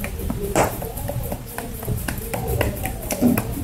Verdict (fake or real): fake